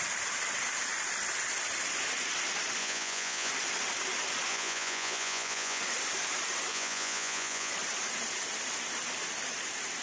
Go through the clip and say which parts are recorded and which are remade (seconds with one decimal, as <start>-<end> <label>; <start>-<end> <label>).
0.0-2.8 recorded; 2.8-3.5 remade; 3.5-4.5 recorded; 4.5-5.8 remade; 5.8-6.7 recorded; 6.7-7.7 remade; 7.7-10.0 recorded